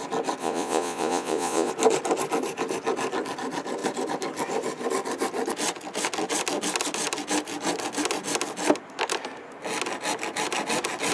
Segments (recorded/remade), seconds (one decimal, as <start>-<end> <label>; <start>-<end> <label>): 0.0-0.4 recorded; 0.4-1.7 remade; 1.7-11.1 recorded